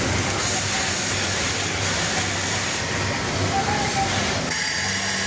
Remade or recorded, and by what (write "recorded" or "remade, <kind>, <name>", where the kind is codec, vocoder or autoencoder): recorded